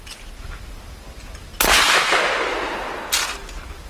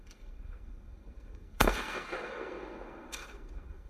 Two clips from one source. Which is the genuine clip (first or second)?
first